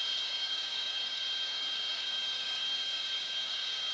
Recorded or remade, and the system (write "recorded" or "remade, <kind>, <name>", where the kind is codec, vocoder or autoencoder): remade, codec, DAC